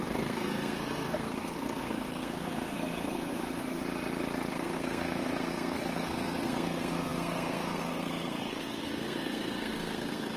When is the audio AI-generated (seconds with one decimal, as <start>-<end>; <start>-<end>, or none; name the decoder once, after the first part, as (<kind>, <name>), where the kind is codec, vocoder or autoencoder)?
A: 0.0-3.8 (codec, SNAC); 4.5-10.4